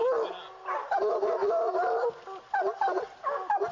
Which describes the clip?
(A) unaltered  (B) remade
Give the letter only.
A